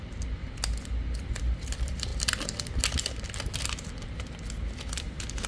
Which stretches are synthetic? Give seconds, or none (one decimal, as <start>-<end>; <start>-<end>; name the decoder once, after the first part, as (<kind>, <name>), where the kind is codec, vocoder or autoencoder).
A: 0.0-0.4 (vocoder, BigVGAN v2); 1.1-2.1; 4.9-5.5